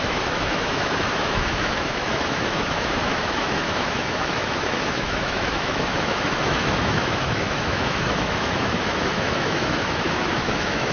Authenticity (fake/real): fake